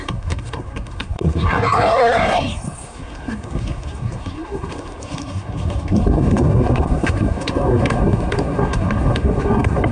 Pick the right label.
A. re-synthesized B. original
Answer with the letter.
A